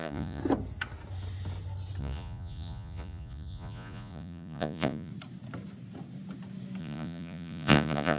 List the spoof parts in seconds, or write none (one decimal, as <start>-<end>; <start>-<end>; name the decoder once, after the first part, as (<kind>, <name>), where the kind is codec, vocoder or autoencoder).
0.0-0.4 (vocoder, Vocos); 2.0-5.1; 6.8-8.2